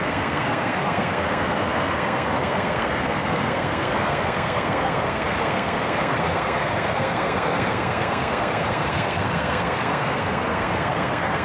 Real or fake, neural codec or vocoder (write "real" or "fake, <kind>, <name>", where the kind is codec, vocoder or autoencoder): fake, codec, SNAC